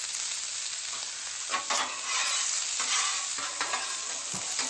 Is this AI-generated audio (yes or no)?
no